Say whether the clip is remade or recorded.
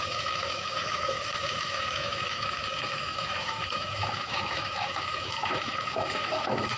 remade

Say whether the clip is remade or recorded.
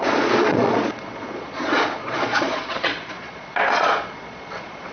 remade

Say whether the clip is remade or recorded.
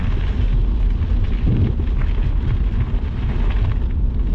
recorded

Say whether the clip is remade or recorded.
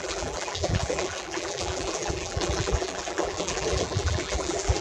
remade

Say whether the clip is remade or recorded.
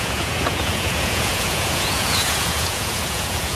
remade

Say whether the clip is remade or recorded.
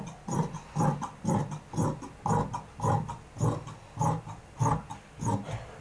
recorded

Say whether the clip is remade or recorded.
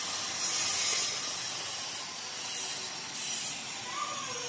recorded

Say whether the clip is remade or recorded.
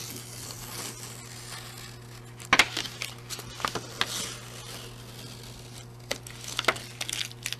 recorded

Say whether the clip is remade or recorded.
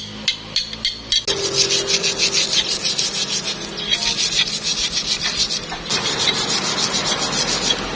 recorded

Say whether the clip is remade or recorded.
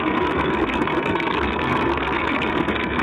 remade